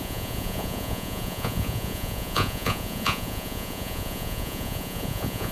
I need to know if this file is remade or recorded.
remade